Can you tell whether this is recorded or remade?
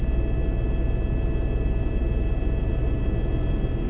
recorded